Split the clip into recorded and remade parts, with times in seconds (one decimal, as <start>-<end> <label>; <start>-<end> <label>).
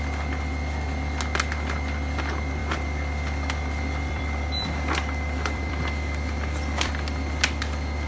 0.0-2.6 recorded; 2.6-6.9 remade; 6.9-8.1 recorded